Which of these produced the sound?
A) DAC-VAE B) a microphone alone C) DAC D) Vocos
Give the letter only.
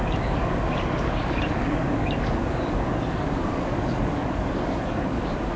C